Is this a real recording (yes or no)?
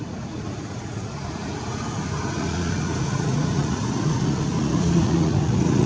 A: no